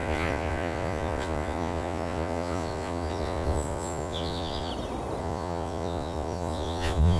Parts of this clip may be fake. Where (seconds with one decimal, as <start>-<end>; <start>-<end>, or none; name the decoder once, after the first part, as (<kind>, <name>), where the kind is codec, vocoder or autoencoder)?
0.0-4.7 (vocoder, Vocos); 5.2-7.2